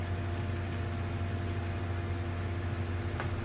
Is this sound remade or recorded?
recorded